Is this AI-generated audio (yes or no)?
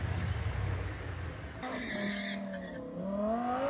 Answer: no